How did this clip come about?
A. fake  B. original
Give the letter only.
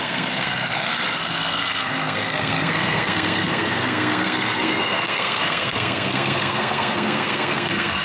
A